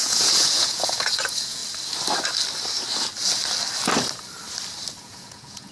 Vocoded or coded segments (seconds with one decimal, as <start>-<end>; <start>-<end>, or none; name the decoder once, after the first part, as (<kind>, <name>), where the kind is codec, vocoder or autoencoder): 0.0-1.6 (vocoder, Vocos); 5.0-5.7